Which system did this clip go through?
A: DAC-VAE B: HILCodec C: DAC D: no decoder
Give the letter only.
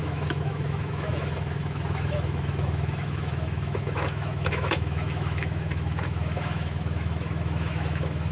A